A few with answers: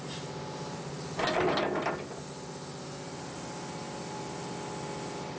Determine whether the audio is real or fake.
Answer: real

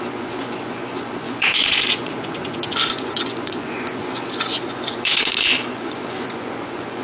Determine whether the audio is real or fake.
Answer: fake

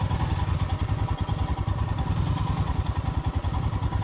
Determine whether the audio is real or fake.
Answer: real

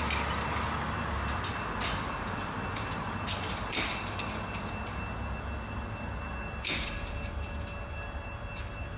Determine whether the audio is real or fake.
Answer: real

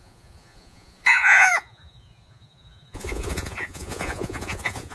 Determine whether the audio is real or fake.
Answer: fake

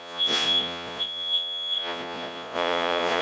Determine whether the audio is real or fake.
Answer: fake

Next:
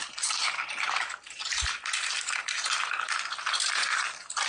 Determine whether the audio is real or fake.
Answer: real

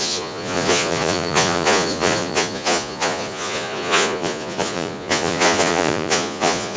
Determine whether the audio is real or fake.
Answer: fake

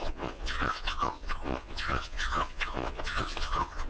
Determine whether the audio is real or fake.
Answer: fake